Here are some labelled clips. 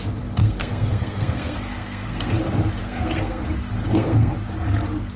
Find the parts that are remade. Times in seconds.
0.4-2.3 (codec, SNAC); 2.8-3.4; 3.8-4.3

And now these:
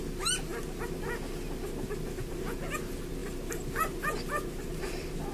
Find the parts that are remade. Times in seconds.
none

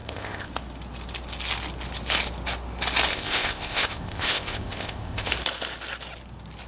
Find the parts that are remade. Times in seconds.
0.0-0.5 (codec, ZipCodec); 3.1-5.3

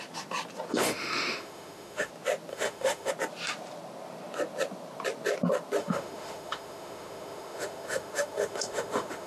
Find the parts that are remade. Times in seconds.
0.7-2.1 (autoencoder, DAC-VAE); 2.5-3.1; 5.8-9.3

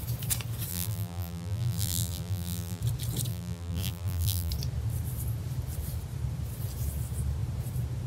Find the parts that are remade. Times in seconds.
0.7-2.8 (vocoder, BigVGAN v2); 3.3-4.5

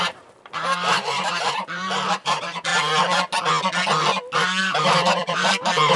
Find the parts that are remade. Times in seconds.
0.0-2.7 (vocoder, BigVGAN v2); 4.6-6.0

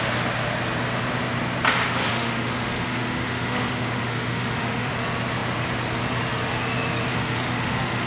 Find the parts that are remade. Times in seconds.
2.1-4.9 (autoencoder, DAC-VAE); 7.1-8.1

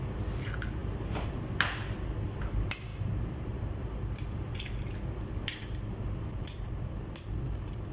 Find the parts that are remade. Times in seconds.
2.9-7.5 (vocoder, BigVGAN v2)